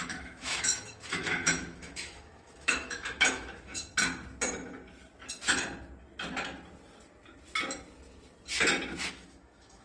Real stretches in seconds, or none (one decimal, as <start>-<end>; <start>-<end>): 3.9-9.1